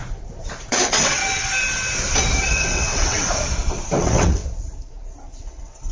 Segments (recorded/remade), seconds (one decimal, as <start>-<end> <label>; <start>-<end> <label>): 0.0-0.7 recorded; 0.7-1.2 remade; 1.2-2.4 recorded; 2.4-3.3 remade; 3.3-4.0 recorded; 4.0-4.4 remade; 4.4-5.4 recorded; 5.4-5.9 remade